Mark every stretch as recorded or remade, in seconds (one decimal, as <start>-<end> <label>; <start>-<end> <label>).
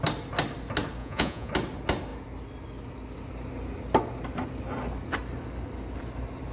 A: 0.0-1.0 recorded; 1.0-1.5 remade; 1.5-6.5 recorded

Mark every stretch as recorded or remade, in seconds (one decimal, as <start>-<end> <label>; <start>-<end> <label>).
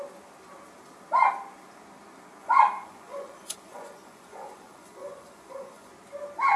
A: 0.0-2.4 recorded; 2.4-5.9 remade; 5.9-6.6 recorded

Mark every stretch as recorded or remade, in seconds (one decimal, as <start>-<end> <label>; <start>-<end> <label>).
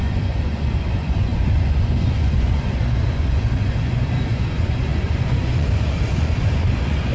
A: 0.0-7.1 remade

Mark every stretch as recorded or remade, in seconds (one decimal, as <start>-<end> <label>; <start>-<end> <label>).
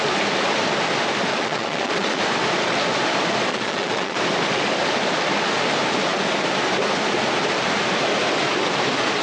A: 0.0-1.3 recorded; 1.3-2.2 remade; 2.2-3.5 recorded; 3.5-4.2 remade; 4.2-9.2 recorded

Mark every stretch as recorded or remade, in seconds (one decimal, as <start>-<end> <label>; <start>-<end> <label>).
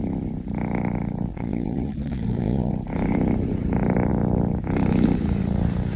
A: 0.0-1.3 recorded; 1.3-2.7 remade; 2.7-6.0 recorded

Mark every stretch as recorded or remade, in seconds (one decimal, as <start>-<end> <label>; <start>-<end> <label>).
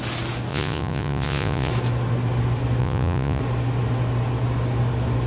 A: 0.0-0.5 recorded; 0.5-1.7 remade; 1.7-2.8 recorded; 2.8-3.4 remade; 3.4-5.3 recorded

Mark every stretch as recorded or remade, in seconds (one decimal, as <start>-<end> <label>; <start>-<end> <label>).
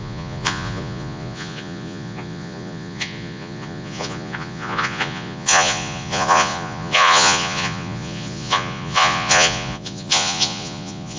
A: 0.0-11.2 remade